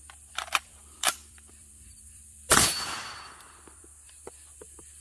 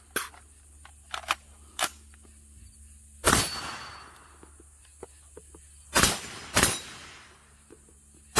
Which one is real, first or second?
second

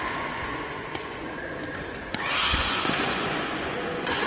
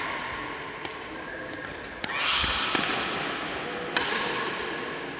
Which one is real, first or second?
second